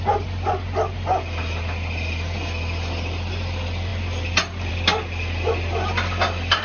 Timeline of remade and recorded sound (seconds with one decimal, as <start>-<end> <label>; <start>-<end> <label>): 0.0-6.6 recorded